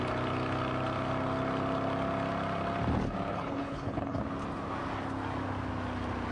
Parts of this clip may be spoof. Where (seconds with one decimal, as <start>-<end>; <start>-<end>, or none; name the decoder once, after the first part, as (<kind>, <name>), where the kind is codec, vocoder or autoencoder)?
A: 3.3-4.2 (codec, HILCodec)